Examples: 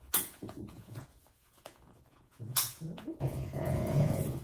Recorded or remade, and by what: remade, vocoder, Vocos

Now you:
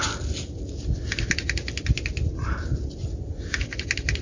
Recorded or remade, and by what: recorded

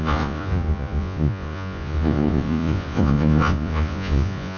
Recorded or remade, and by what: remade, vocoder, Vocos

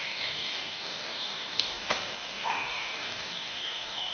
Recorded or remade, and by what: remade, codec, DAC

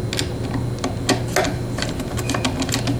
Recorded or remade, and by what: recorded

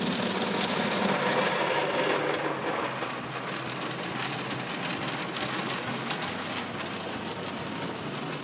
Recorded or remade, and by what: recorded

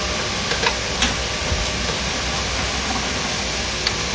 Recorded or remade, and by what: recorded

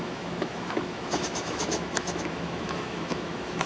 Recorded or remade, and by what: remade, autoencoder, DAC-VAE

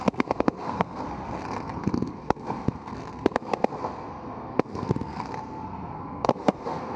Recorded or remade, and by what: remade, codec, SNAC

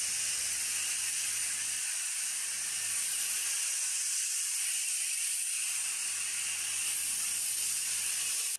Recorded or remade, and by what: recorded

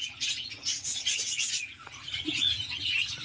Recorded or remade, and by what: remade, vocoder, Vocos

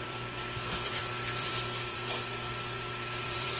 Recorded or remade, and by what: remade, vocoder, BigVGAN v2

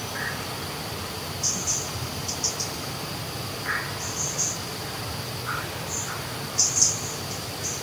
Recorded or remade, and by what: recorded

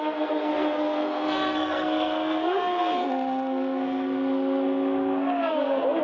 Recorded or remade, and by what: remade, codec, SNAC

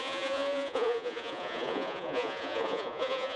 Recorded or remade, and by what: remade, vocoder, Vocos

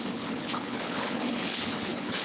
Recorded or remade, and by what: remade, codec, HILCodec